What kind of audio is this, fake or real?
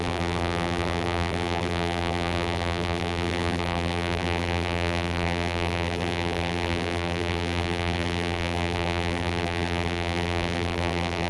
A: fake